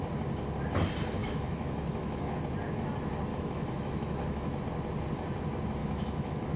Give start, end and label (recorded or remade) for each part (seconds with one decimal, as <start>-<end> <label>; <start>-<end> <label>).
0.0-1.2 recorded; 1.2-2.4 remade; 2.4-3.3 recorded; 3.3-4.6 remade; 4.6-5.8 recorded; 5.8-6.6 remade